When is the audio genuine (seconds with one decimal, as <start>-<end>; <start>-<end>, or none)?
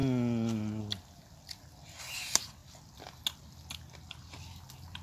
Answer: 0.0-5.0